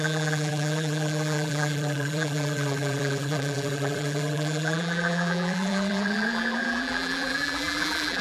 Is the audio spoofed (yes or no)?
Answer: yes